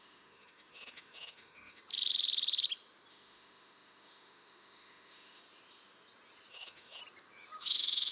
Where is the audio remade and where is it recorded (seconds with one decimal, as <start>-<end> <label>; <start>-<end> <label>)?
0.0-1.8 remade; 1.8-3.1 recorded; 3.1-5.4 remade; 5.4-6.5 recorded; 6.5-7.0 remade; 7.0-7.6 recorded; 7.6-8.1 remade